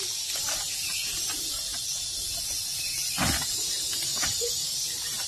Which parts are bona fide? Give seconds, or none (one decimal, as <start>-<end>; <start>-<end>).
0.0-4.1; 4.8-5.3